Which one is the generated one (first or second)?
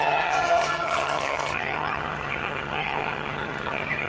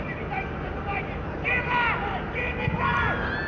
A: first